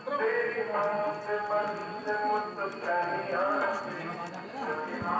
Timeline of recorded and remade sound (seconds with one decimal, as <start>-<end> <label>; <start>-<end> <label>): 0.0-5.2 recorded